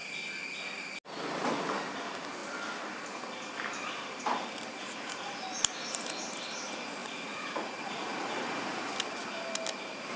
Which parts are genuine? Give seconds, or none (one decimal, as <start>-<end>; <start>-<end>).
0.0-4.8; 5.3-7.0; 8.9-10.2